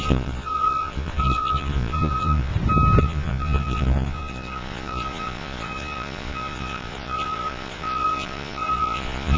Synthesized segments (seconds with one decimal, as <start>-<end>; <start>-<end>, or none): 0.0-2.5; 3.0-9.4